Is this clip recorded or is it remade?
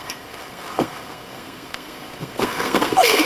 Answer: remade